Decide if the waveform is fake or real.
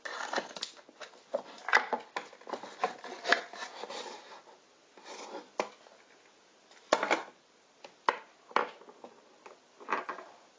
real